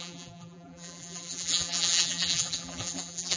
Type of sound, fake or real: fake